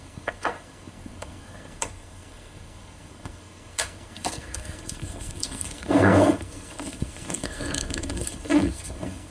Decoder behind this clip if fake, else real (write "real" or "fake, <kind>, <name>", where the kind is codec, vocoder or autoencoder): fake, codec, SNAC